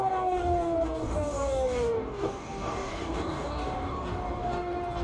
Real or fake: fake